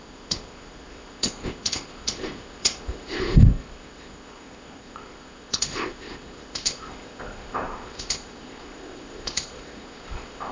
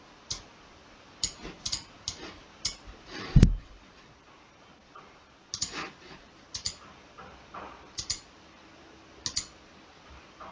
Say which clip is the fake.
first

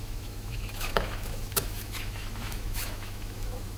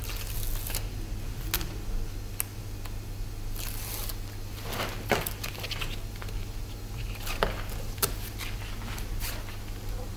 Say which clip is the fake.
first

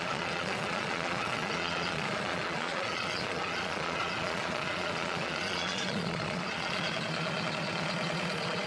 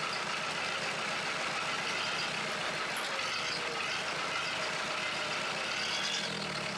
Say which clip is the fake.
first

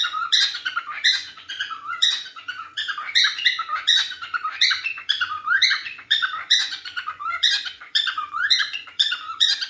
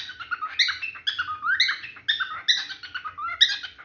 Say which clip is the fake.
first